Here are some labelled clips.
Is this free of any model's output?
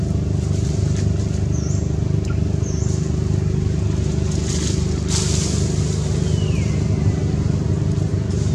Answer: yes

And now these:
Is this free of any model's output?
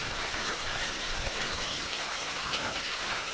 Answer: no